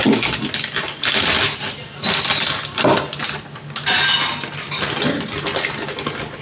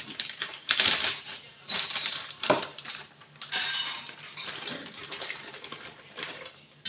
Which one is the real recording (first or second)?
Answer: first